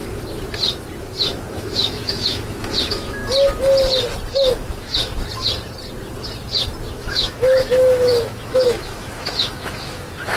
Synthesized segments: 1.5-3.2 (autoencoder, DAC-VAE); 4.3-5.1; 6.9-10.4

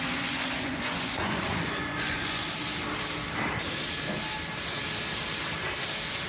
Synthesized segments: 0.0-2.4 (vocoder, Vocos)

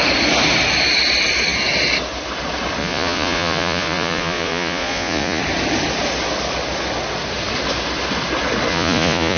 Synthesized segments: 2.8-5.4 (vocoder, Vocos); 8.7-9.4

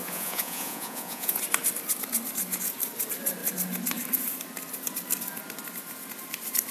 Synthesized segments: 0.0-1.4 (vocoder, Vocos)